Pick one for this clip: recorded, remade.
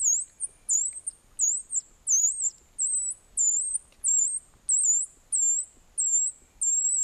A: recorded